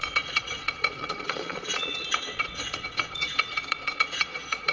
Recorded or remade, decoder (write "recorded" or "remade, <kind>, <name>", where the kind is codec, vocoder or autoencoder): remade, vocoder, Vocos